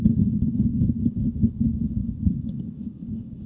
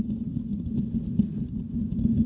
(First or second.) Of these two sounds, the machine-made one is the first